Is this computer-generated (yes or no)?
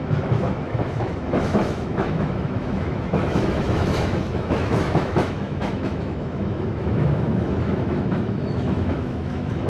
yes